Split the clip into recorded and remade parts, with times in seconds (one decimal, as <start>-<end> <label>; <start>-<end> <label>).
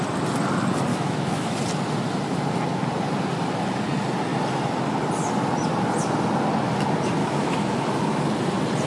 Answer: 0.0-0.9 recorded; 0.9-1.6 remade; 1.6-7.2 recorded; 7.2-8.3 remade; 8.3-8.9 recorded